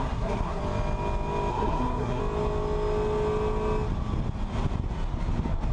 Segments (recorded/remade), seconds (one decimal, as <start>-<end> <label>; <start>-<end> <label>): 0.0-0.6 remade; 0.6-1.5 recorded; 1.5-2.2 remade; 2.2-5.7 recorded